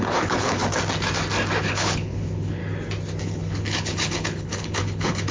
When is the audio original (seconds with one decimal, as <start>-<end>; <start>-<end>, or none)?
0.6-1.6; 2.6-3.2